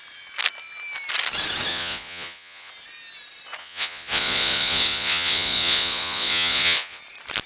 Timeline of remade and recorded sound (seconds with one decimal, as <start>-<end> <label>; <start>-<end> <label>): 0.0-1.7 recorded; 1.7-2.7 remade; 2.7-3.6 recorded; 3.6-7.0 remade; 7.0-7.5 recorded